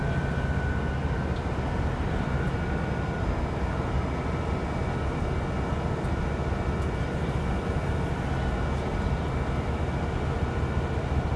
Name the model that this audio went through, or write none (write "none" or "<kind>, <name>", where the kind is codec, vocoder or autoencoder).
none